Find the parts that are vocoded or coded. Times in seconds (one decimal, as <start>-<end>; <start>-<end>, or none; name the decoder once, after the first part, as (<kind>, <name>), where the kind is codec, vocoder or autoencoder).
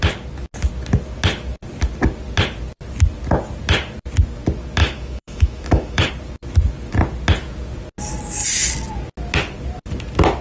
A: 4.8-6.1 (autoencoder, DAC-VAE)